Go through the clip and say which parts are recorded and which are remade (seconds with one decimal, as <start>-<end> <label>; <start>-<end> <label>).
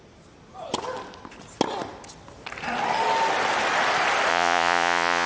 0.0-4.3 recorded; 4.3-5.3 remade